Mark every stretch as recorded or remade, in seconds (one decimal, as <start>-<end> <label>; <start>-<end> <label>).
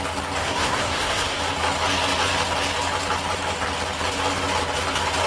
0.0-0.4 recorded; 0.4-1.4 remade; 1.4-5.3 recorded